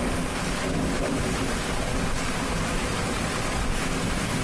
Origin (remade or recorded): remade